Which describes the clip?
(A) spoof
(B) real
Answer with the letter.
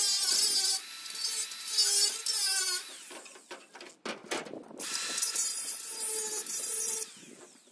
B